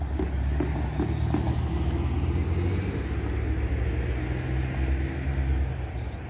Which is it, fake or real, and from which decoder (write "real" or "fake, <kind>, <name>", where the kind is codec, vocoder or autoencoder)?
real